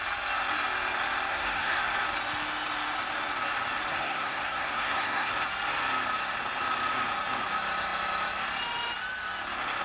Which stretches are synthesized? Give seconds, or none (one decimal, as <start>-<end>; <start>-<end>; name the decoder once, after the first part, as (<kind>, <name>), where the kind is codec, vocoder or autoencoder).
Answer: 1.3-1.8 (codec, SNAC); 3.9-5.3